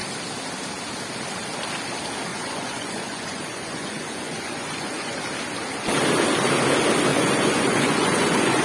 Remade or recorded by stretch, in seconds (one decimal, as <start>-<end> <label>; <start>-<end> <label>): 0.0-2.3 recorded; 2.3-5.2 remade; 5.2-7.1 recorded; 7.1-8.6 remade